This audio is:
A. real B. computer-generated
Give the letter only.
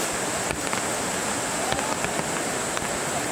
A